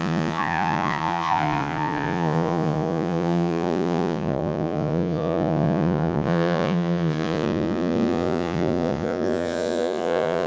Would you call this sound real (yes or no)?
no